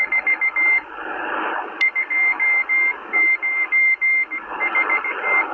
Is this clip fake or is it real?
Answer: fake